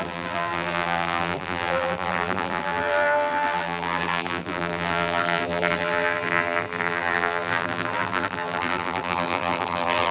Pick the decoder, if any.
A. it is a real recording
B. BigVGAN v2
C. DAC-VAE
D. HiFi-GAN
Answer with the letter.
B